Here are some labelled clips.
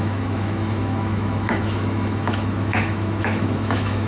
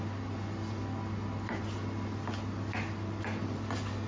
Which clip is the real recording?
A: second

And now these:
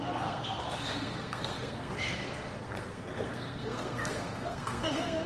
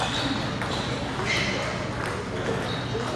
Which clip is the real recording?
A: second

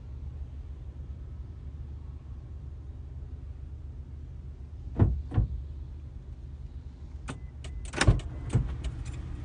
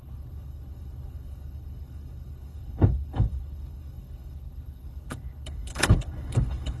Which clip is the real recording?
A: first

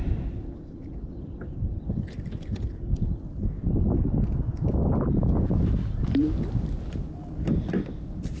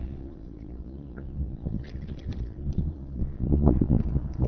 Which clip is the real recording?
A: first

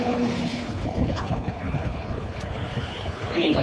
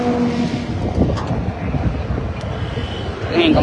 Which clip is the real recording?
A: second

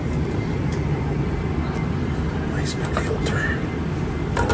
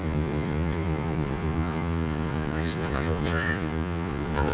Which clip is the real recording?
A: first